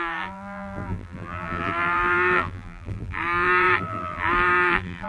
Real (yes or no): no